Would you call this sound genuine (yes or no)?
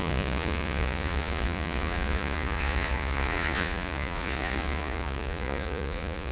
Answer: no